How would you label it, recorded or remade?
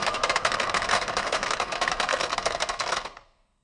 remade